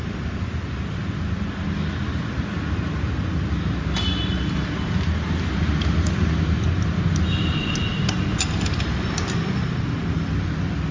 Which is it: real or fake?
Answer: real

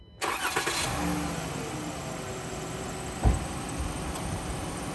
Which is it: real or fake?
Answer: real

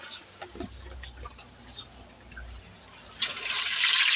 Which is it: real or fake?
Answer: real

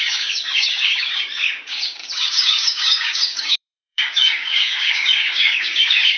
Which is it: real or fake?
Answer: fake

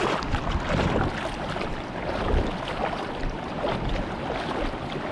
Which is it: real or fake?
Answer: real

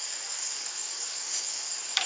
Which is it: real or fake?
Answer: fake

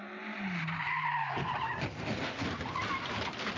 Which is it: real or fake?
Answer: real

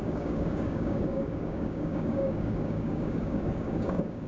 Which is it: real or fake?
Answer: fake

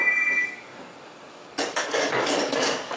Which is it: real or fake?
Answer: fake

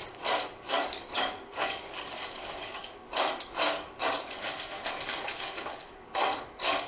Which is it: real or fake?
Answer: fake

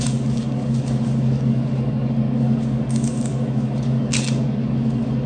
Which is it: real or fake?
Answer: fake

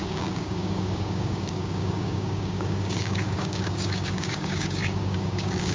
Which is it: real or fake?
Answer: fake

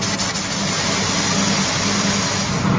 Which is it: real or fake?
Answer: real